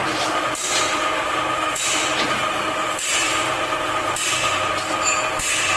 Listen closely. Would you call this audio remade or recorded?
recorded